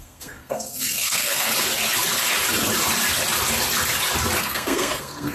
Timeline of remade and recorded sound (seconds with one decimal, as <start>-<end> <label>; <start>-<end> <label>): 0.0-1.5 remade; 1.5-4.4 recorded; 4.4-5.3 remade